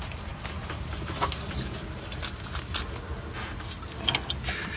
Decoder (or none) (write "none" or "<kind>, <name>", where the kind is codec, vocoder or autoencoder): none